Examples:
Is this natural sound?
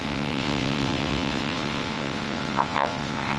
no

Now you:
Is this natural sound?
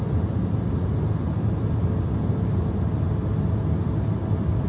yes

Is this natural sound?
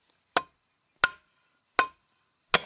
yes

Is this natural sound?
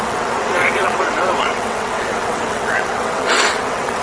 no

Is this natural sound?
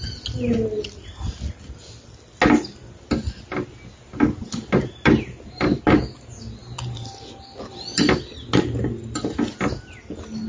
yes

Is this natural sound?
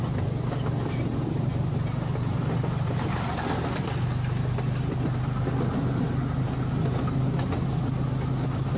yes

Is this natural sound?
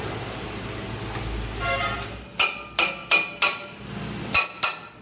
yes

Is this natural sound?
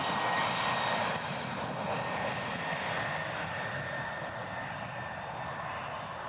yes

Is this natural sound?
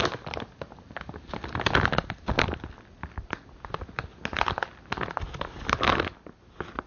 yes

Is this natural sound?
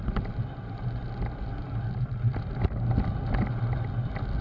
yes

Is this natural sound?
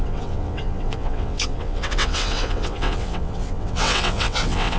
no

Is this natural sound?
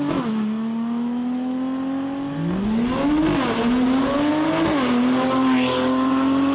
yes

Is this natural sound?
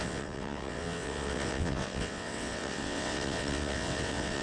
no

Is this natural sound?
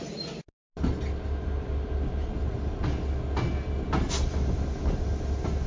yes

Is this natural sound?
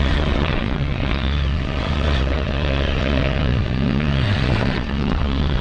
no